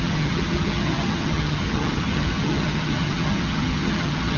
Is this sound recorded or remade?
remade